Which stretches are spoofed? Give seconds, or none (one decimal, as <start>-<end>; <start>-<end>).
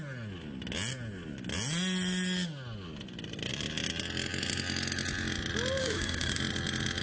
5.8-6.4